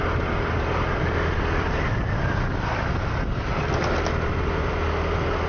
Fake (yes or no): no